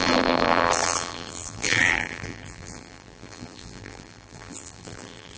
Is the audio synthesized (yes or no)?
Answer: yes